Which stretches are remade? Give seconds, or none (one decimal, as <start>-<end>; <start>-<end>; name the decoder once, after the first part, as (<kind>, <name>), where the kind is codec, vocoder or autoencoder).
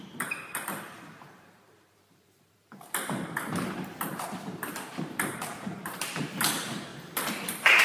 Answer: 0.0-6.9 (vocoder, BigVGAN v2)